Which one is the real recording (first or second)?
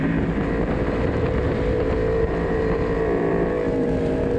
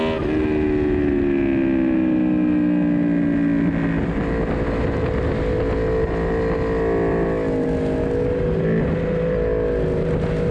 second